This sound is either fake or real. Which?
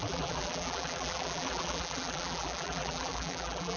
fake